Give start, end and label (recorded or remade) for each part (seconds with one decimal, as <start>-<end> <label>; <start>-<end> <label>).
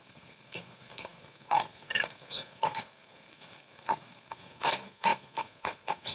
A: 0.0-6.1 remade